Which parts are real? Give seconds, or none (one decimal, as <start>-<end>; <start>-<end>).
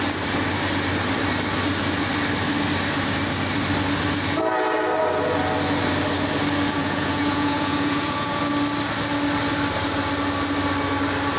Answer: 0.0-6.8; 8.4-11.4